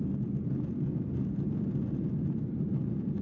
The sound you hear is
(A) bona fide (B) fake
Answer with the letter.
A